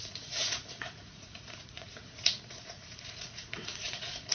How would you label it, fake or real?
fake